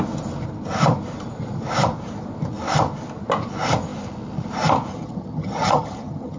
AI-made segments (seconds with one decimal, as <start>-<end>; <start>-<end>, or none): 4.9-6.4